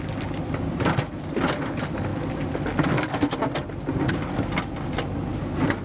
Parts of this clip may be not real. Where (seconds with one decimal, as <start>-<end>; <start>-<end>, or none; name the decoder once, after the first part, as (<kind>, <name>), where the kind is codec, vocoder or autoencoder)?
none